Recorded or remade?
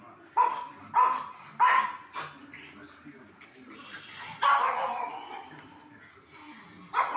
recorded